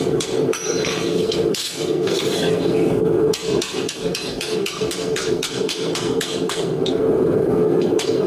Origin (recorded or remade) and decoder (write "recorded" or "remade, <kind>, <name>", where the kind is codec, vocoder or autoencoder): remade, codec, SNAC